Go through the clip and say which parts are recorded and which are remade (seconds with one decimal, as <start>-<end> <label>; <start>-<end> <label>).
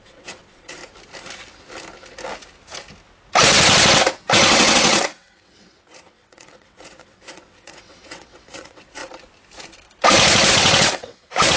0.0-0.8 remade; 0.8-4.2 recorded; 4.2-9.0 remade; 9.0-10.5 recorded; 10.5-11.6 remade